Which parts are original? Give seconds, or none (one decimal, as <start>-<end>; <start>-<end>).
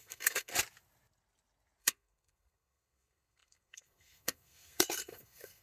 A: 0.5-1.8